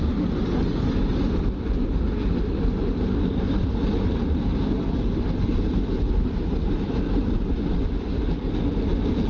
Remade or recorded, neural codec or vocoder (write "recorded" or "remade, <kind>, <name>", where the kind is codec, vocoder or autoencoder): recorded